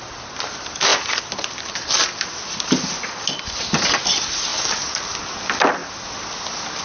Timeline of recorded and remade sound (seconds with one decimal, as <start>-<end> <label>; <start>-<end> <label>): 0.0-6.8 recorded